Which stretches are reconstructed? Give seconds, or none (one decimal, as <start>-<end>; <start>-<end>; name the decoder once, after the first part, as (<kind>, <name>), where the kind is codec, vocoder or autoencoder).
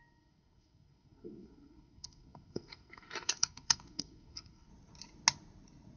0.0-4.7 (codec, SNAC)